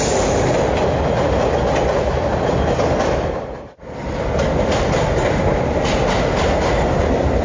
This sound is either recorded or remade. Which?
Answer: recorded